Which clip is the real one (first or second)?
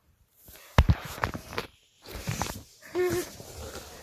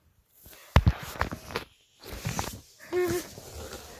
second